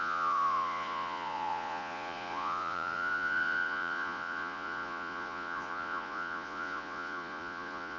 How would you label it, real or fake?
fake